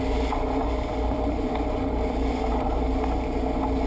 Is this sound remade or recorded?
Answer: recorded